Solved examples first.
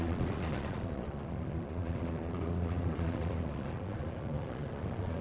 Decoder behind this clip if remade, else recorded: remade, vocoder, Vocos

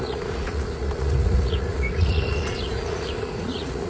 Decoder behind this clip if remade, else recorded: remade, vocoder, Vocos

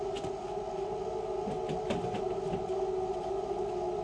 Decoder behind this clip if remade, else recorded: recorded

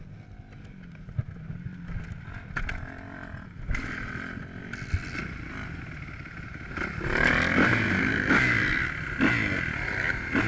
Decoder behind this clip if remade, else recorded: recorded